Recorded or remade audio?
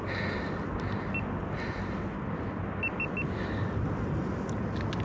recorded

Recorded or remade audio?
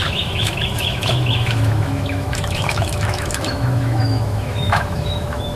remade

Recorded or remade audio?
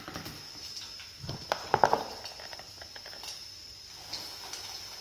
recorded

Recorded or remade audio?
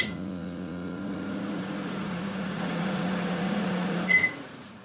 remade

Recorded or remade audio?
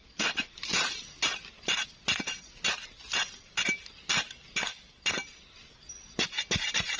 recorded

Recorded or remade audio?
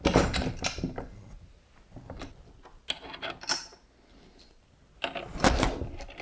recorded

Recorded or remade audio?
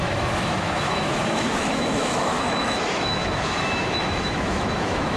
remade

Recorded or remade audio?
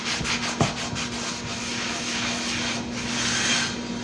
recorded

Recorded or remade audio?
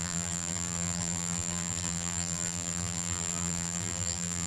remade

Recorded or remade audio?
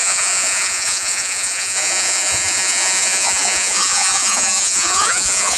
remade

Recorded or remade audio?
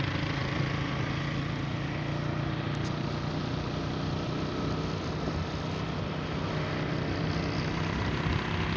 recorded